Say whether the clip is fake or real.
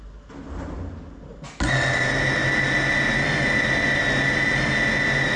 real